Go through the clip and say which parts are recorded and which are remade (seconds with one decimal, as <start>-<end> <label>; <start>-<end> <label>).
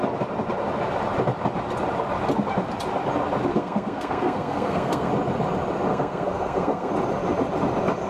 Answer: 0.0-3.5 recorded; 3.5-5.1 remade; 5.1-5.9 recorded; 5.9-6.9 remade; 6.9-8.1 recorded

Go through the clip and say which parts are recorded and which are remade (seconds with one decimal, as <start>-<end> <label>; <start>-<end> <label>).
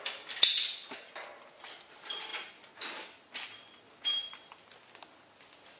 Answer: 0.0-5.8 recorded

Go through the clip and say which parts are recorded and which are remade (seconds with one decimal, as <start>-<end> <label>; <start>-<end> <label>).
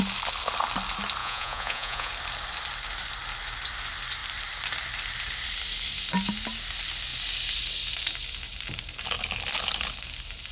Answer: 0.0-1.2 recorded; 1.2-2.1 remade; 2.1-10.5 recorded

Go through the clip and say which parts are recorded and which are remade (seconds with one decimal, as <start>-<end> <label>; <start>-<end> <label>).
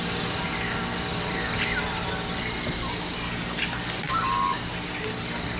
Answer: 0.0-5.6 recorded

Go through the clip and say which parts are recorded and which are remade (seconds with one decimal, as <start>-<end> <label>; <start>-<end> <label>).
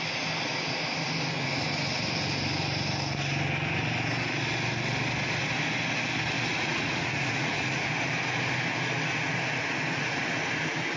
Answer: 0.0-6.5 recorded; 6.5-7.9 remade; 7.9-11.0 recorded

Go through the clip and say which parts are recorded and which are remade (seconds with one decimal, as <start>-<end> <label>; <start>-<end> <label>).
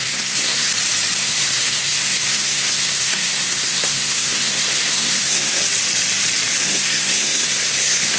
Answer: 0.0-0.7 remade; 0.7-1.2 recorded; 1.2-5.6 remade; 5.6-6.6 recorded; 6.6-8.2 remade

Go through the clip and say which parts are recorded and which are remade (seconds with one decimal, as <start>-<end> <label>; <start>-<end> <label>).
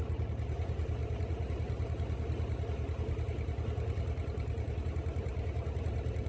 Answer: 0.0-6.3 recorded